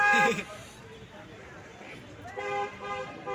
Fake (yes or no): yes